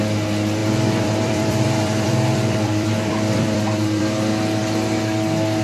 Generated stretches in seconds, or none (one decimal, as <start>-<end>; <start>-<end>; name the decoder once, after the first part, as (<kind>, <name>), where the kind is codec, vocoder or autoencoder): 0.6-4.0 (vocoder, BigVGAN v2)